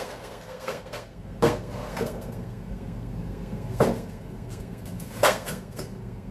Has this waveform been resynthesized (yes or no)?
yes